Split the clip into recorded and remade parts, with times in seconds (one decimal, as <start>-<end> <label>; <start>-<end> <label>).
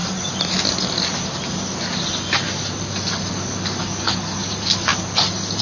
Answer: 0.0-5.6 recorded